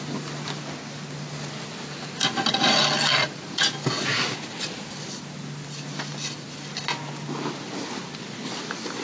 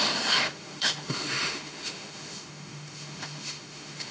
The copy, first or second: second